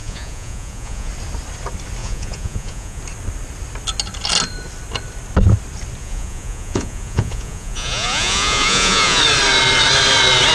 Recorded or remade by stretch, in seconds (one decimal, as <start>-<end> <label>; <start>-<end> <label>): 0.0-1.1 remade; 1.1-2.0 recorded; 2.0-3.0 remade; 3.0-6.0 recorded; 6.0-9.2 remade; 9.2-10.5 recorded